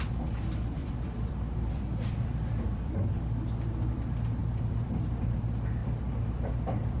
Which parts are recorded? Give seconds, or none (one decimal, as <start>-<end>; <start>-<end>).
0.0-0.8; 2.9-4.4; 4.9-5.8; 6.5-7.0